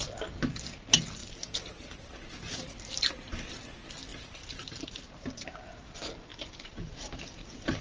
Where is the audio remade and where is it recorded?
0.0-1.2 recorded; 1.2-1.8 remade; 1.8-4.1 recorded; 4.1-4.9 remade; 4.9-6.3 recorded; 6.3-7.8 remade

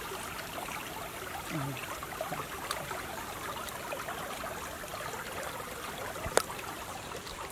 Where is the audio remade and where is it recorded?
0.0-4.9 recorded; 4.9-6.1 remade; 6.1-7.5 recorded

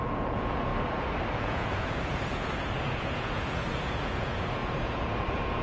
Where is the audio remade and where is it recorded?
0.0-0.7 remade; 0.7-1.4 recorded; 1.4-5.6 remade

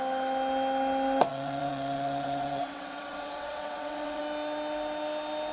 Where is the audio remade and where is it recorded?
0.0-1.3 recorded; 1.3-4.2 remade; 4.2-5.5 recorded

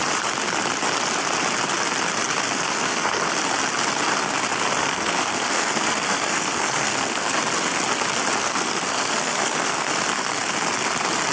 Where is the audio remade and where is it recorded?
0.0-2.4 recorded; 2.4-3.3 remade; 3.3-4.8 recorded; 4.8-7.3 remade; 7.3-8.4 recorded; 8.4-9.9 remade; 9.9-11.3 recorded

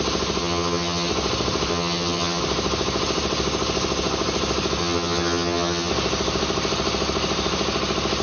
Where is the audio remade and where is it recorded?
0.0-0.4 recorded; 0.4-1.1 remade; 1.1-1.7 recorded; 1.7-2.4 remade; 2.4-4.8 recorded; 4.8-5.9 remade; 5.9-8.2 recorded